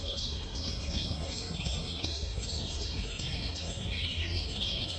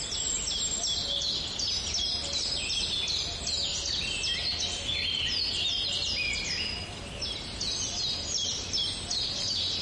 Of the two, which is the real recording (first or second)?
second